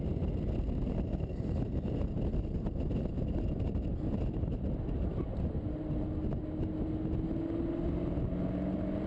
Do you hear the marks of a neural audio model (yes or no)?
no